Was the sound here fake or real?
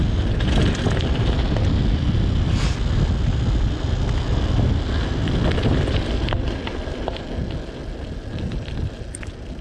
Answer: real